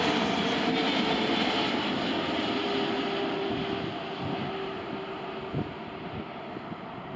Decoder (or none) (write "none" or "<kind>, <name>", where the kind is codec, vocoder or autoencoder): none